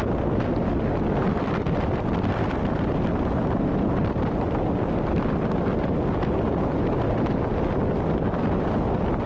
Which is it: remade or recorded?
recorded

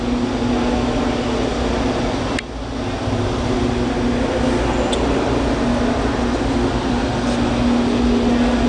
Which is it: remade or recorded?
recorded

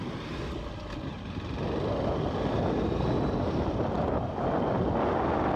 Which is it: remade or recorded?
recorded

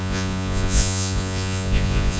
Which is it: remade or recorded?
remade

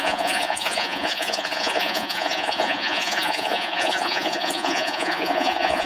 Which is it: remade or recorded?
remade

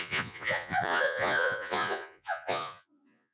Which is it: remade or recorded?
remade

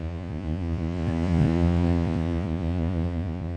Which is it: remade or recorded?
remade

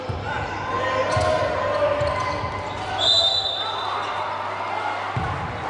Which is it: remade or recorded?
recorded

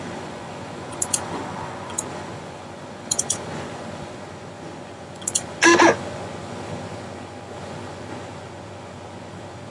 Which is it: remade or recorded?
remade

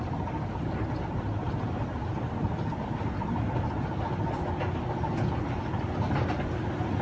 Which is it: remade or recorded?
recorded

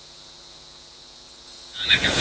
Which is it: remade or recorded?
remade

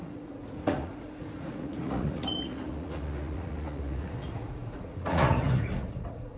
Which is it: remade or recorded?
remade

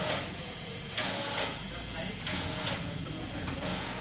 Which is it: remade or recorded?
remade